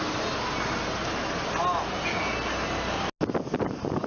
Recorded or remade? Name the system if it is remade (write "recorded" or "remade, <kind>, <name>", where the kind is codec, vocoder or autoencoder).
recorded